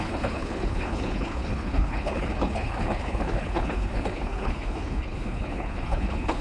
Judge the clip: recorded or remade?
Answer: remade